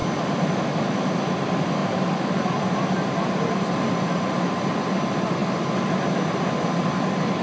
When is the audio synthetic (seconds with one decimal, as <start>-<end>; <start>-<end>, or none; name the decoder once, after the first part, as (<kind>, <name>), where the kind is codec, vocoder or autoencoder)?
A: 1.8-5.0 (vocoder, BigVGAN v2)